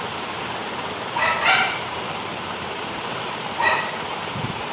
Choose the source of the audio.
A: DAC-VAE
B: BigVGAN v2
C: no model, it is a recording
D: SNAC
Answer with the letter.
B